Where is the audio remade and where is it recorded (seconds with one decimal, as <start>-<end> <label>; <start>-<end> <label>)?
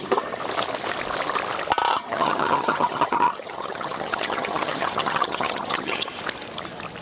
0.0-1.9 recorded; 1.9-6.1 remade; 6.1-7.0 recorded